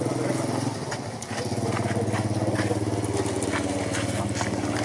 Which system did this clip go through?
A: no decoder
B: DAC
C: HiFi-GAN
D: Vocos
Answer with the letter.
A